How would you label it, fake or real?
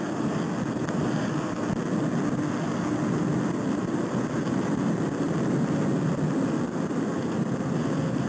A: real